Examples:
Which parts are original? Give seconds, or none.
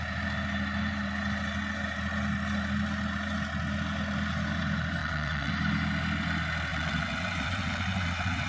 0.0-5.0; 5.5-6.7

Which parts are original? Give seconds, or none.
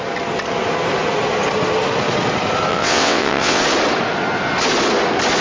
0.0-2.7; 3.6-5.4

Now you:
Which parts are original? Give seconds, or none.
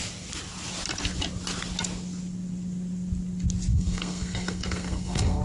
0.0-3.7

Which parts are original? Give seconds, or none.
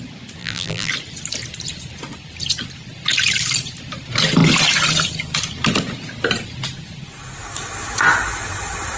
0.0-0.4; 0.9-9.0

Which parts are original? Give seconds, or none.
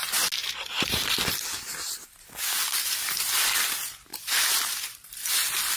0.0-5.8